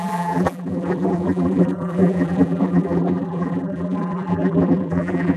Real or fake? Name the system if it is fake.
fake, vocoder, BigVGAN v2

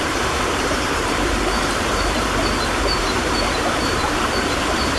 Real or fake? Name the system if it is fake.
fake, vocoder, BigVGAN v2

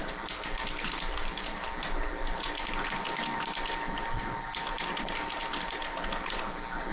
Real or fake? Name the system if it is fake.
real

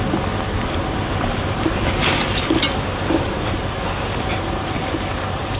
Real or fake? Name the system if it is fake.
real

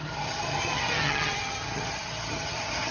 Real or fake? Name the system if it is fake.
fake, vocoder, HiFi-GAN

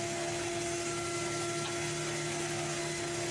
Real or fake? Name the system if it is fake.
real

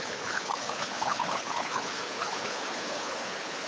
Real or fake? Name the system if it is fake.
fake, codec, HILCodec